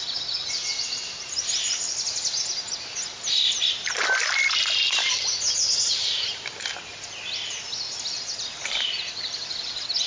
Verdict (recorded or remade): recorded